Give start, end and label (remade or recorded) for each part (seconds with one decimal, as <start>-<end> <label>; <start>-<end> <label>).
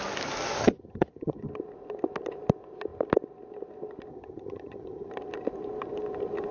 0.0-0.6 recorded; 0.6-1.5 remade; 1.5-4.1 recorded; 4.1-5.1 remade; 5.1-6.5 recorded